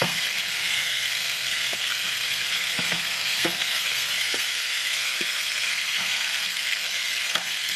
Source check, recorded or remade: remade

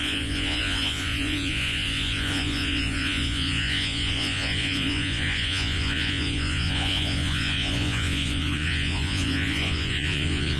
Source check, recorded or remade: remade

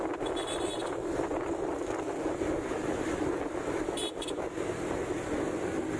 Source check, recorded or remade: recorded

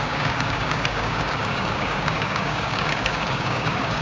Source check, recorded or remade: remade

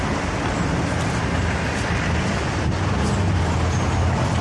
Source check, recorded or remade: recorded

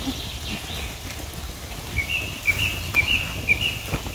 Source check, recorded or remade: recorded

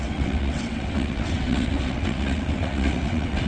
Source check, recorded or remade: remade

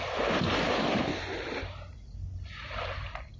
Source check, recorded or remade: recorded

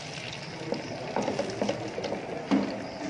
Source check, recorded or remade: recorded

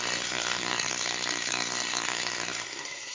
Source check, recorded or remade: remade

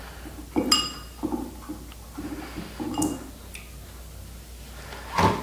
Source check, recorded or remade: recorded